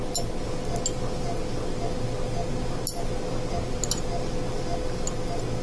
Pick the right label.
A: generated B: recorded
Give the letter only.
B